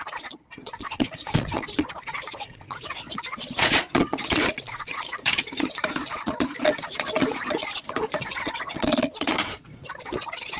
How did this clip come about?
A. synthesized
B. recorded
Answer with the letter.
A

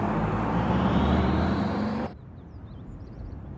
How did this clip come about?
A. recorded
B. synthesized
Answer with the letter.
B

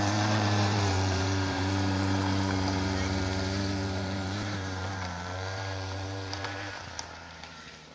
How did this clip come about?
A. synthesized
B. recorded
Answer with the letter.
A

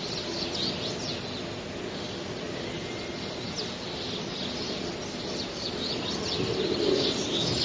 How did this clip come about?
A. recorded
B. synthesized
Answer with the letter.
A